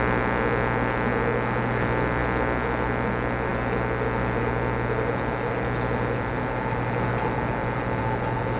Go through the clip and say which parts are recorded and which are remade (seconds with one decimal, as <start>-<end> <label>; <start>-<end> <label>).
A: 0.0-8.6 recorded